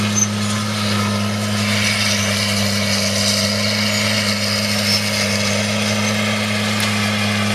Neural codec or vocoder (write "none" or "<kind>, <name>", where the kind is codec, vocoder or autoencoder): none